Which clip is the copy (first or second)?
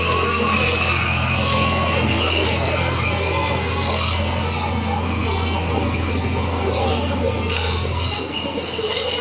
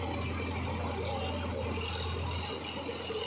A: first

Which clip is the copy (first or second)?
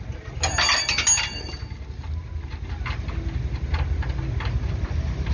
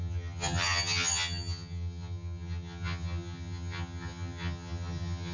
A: second